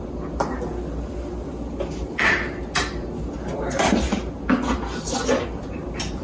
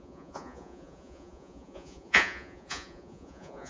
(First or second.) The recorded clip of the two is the first